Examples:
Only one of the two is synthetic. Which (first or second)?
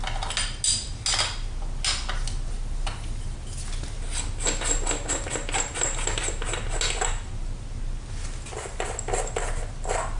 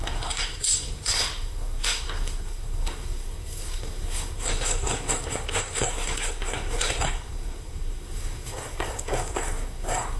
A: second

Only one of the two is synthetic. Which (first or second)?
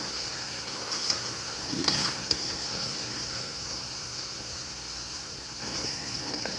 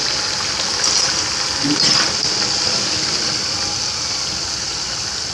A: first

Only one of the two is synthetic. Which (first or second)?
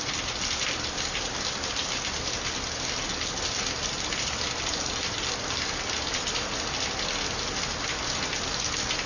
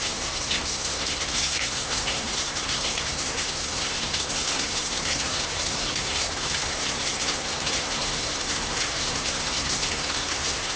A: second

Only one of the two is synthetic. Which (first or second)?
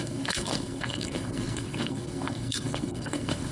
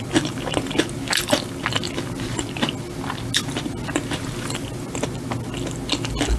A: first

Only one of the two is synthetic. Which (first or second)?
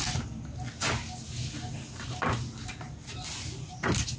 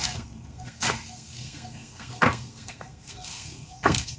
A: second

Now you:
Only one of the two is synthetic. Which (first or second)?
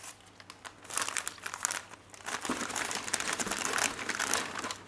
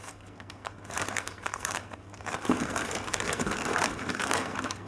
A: second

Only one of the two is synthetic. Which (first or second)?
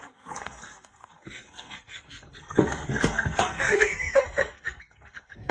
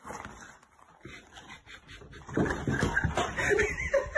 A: first